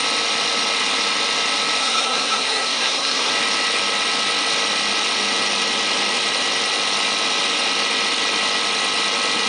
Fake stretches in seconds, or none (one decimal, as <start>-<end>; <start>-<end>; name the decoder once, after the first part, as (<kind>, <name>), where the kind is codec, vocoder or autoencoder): 1.8-3.3 (codec, SNAC)

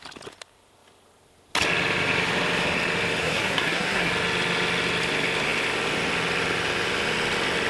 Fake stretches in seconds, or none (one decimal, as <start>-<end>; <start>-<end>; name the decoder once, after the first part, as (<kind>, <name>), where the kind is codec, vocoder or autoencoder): 3.2-4.1 (codec, SNAC)

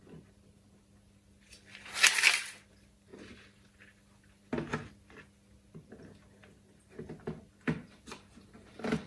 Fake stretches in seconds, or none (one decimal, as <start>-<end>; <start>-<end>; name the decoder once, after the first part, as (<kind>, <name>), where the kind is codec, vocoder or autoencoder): none